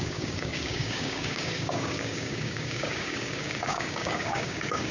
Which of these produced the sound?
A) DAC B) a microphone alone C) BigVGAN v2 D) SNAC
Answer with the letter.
A